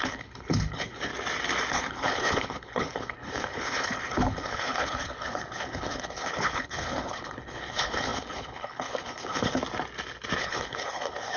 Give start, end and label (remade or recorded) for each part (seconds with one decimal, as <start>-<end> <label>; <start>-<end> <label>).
0.0-1.1 remade; 1.1-1.7 recorded; 1.7-9.6 remade; 9.6-10.4 recorded; 10.4-11.4 remade

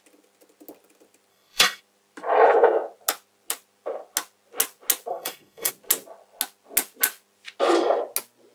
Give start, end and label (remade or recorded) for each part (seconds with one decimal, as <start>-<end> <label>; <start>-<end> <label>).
0.0-1.3 recorded; 1.3-1.8 remade; 1.8-5.1 recorded; 5.1-5.7 remade; 5.7-8.5 recorded

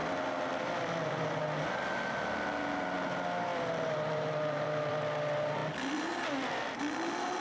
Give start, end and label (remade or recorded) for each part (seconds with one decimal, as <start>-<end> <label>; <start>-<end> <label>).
0.0-1.4 remade; 1.4-3.5 recorded; 3.5-5.0 remade; 5.0-5.6 recorded; 5.6-6.8 remade; 6.8-7.4 recorded

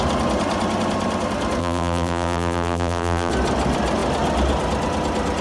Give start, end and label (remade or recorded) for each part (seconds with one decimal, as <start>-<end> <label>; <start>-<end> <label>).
0.0-1.6 recorded; 1.6-3.3 remade; 3.3-5.4 recorded

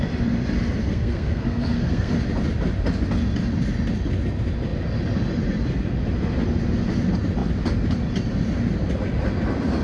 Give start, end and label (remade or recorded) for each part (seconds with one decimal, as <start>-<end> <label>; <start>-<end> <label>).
0.0-0.8 recorded; 0.8-2.1 remade; 2.1-9.8 recorded

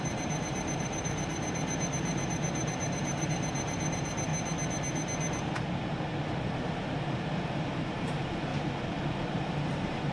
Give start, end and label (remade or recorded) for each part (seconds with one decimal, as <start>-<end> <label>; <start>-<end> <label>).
0.0-4.3 remade; 4.3-6.4 recorded; 6.4-8.5 remade; 8.5-9.1 recorded; 9.1-10.1 remade

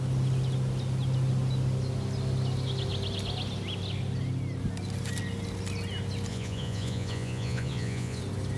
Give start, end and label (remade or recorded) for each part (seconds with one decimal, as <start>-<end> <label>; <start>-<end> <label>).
0.0-6.3 recorded; 6.3-8.2 remade; 8.2-8.6 recorded